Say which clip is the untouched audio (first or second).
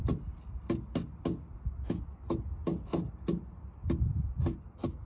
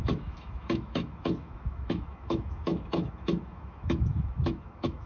first